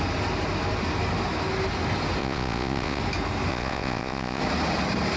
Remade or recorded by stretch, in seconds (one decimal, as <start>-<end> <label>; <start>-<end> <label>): 0.0-2.2 recorded; 2.2-3.0 remade; 3.0-3.5 recorded; 3.5-4.4 remade; 4.4-5.2 recorded